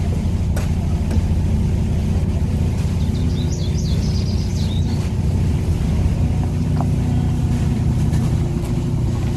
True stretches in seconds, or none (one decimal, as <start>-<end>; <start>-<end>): 0.0-9.4